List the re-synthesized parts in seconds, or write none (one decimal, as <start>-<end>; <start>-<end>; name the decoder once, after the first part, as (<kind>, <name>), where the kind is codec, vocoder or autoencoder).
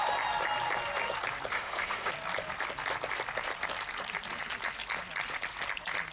1.5-2.1 (autoencoder, DAC-VAE)